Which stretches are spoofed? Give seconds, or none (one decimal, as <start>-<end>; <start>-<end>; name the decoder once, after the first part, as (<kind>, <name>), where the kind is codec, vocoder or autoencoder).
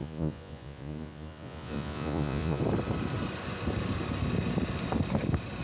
0.0-2.6 (vocoder, Vocos)